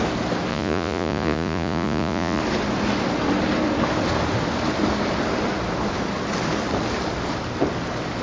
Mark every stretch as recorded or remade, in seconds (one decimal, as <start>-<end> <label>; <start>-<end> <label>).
0.0-0.5 recorded; 0.5-2.4 remade; 2.4-8.2 recorded